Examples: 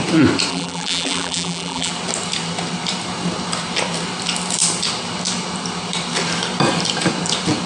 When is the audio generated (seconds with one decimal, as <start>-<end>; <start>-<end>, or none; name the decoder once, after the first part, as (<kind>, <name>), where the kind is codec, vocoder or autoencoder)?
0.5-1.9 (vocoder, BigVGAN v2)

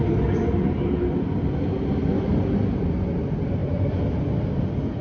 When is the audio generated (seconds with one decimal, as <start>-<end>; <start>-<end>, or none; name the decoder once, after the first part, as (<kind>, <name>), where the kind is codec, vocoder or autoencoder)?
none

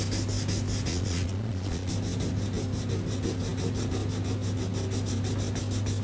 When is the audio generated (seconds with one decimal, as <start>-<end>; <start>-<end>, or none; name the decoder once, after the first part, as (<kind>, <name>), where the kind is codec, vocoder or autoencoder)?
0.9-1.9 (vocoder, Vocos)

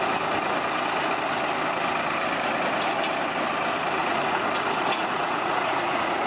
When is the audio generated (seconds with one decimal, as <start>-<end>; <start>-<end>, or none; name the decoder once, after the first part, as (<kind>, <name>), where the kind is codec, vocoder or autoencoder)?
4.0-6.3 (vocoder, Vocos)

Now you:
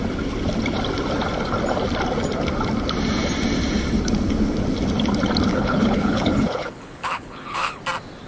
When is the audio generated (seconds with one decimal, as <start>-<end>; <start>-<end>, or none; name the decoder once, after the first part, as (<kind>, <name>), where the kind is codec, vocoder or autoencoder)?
5.5-7.8 (codec, HILCodec)

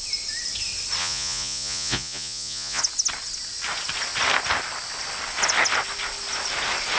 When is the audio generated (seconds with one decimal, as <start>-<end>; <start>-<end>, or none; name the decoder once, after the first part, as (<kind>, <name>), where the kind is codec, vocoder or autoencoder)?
1.0-2.8 (vocoder, Vocos)

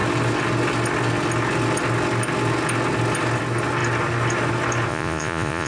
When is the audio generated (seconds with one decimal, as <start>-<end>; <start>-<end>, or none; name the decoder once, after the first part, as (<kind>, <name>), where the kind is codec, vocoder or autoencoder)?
4.9-5.7 (vocoder, Vocos)

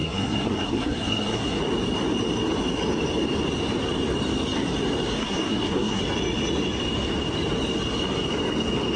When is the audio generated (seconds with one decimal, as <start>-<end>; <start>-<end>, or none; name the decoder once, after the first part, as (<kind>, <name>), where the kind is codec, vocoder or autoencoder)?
0.0-1.6 (codec, SNAC); 5.2-6.0